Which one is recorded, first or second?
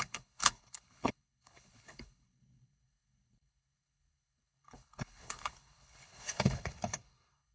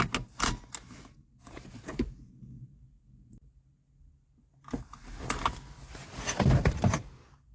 second